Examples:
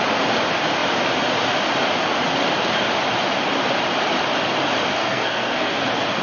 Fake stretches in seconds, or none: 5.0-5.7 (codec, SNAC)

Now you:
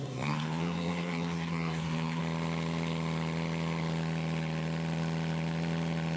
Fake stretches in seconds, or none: 0.0-2.2 (codec, SNAC)

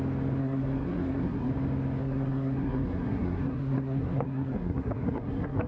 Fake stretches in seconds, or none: 0.4-1.5 (codec, SNAC); 2.0-5.7

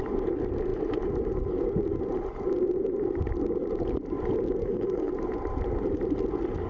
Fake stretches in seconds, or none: 4.6-5.1 (codec, SNAC)

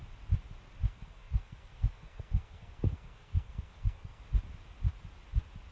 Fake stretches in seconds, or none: 0.8-4.2 (codec, SNAC)

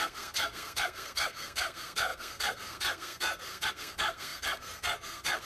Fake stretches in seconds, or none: 0.0-5.4 (codec, SNAC)